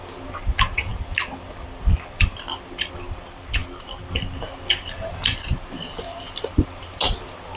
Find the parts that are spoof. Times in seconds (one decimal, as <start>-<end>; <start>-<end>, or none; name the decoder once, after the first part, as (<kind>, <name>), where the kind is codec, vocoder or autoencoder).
none

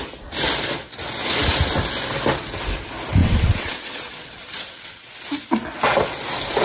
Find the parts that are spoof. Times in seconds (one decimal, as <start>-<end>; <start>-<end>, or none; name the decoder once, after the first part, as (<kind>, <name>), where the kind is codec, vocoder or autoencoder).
3.2-5.1 (vocoder, WaveNeXt)

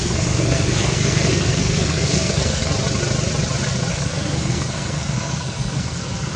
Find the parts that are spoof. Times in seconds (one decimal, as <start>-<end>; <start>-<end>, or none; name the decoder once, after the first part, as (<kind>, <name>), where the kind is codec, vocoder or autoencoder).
0.0-2.7 (codec, SNAC); 3.9-6.4

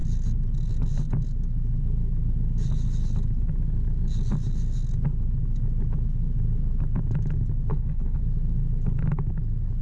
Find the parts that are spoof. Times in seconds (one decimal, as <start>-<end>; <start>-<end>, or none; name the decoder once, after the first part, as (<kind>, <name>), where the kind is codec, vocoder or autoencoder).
7.7-8.2 (codec, HILCodec)

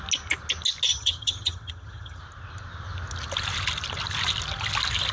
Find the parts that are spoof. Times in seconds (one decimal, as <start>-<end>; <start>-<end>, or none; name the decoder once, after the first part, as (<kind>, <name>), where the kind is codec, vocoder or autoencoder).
0.9-2.2 (vocoder, HiFi-GAN)

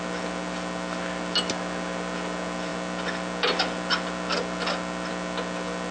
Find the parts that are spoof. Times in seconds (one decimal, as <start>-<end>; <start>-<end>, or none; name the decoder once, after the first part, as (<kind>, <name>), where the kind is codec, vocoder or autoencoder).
none

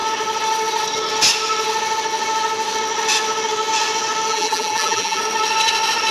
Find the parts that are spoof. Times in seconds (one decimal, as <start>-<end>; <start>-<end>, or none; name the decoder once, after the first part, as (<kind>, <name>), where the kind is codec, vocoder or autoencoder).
4.3-5.2 (vocoder, BigVGAN v2)

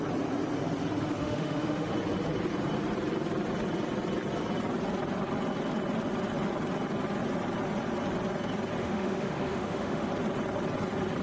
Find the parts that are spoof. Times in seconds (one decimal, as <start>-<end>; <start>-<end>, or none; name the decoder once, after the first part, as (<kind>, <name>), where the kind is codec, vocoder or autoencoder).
1.2-1.9 (autoencoder, DAC-VAE); 8.8-10.1